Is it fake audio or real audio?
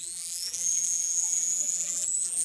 fake